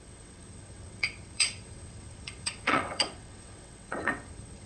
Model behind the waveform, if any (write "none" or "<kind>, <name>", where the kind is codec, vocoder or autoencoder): vocoder, WaveNeXt